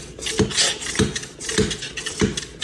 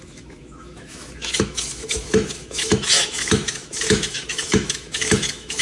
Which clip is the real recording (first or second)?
first